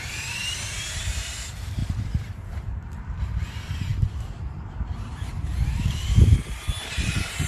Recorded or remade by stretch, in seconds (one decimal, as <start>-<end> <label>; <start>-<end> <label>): 0.0-7.5 remade